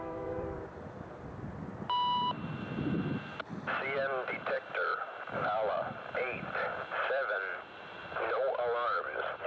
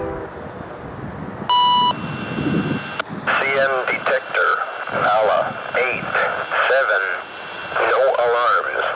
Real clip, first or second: second